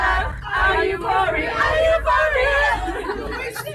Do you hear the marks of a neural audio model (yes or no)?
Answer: no